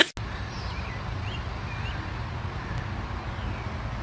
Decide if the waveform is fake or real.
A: real